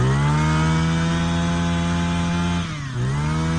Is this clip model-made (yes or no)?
no